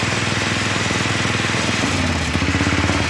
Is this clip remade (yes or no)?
no